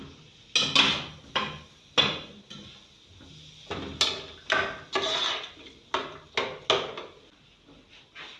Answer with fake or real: real